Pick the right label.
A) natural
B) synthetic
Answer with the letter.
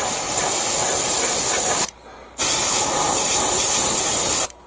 A